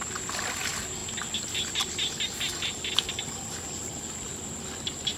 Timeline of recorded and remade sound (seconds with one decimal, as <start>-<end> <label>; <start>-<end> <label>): 0.0-5.2 recorded